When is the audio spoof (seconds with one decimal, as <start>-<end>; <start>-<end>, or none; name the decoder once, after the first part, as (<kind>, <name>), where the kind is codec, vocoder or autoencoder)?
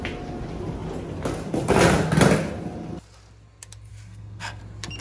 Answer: 3.9-4.6 (codec, SNAC)